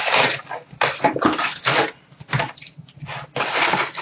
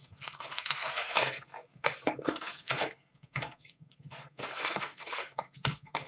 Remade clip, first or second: second